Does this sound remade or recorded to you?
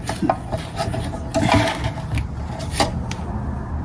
recorded